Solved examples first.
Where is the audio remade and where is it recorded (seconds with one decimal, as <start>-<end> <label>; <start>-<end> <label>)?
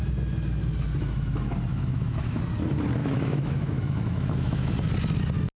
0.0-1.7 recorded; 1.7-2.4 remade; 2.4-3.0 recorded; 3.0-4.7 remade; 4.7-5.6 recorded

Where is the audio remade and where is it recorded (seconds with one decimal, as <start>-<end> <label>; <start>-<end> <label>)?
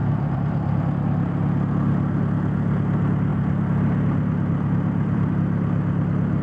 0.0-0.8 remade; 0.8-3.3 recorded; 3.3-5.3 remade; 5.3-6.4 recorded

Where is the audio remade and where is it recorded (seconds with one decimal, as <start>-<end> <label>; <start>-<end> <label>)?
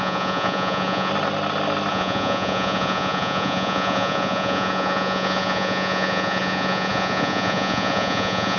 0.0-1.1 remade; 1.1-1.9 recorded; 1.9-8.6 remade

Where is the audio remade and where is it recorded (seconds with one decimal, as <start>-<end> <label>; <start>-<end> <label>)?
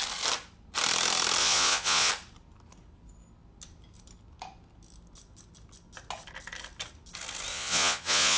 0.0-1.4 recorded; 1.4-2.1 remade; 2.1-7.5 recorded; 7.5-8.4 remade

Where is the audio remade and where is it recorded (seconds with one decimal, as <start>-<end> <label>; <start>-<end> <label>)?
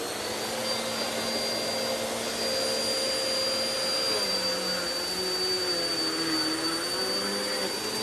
0.0-8.0 recorded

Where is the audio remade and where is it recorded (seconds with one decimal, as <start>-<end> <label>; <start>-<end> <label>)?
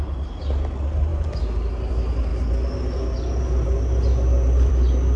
0.0-5.2 recorded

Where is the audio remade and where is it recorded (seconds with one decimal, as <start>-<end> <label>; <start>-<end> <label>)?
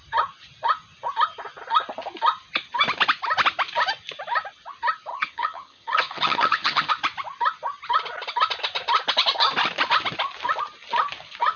0.0-5.1 recorded; 5.1-6.9 remade; 6.9-11.6 recorded